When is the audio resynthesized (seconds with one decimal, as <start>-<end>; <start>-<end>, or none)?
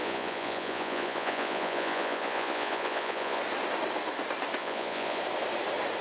0.0-3.4; 4.6-5.2